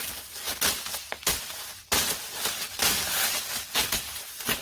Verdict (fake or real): real